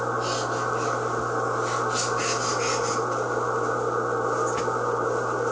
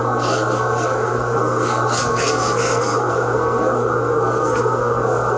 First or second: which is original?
first